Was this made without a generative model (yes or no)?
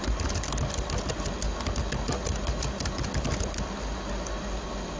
yes